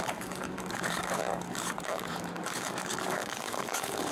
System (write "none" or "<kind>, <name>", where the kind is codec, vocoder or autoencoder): codec, DAC